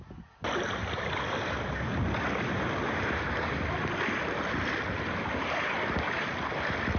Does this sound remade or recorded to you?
recorded